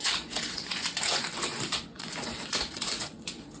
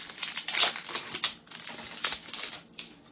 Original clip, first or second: second